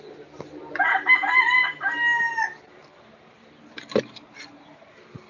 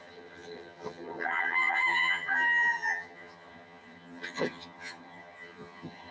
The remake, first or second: second